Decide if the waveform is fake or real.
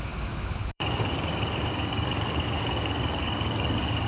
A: fake